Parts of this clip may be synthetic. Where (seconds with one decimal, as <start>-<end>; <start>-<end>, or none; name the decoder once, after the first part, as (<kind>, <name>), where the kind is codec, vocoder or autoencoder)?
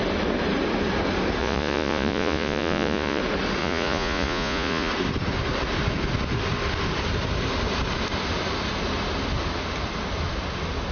1.4-3.2 (vocoder, Vocos); 3.6-4.9